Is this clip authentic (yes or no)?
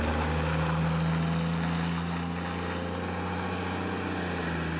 yes